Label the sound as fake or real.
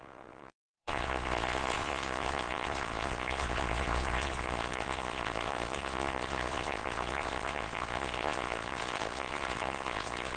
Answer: fake